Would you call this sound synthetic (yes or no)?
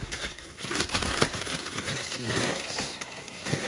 yes